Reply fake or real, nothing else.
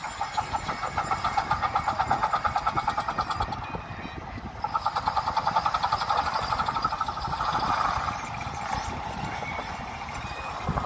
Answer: real